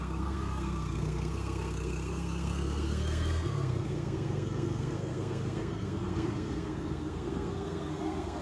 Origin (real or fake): fake